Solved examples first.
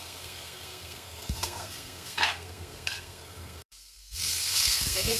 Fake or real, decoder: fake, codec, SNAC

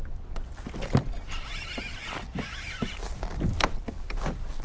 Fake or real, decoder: real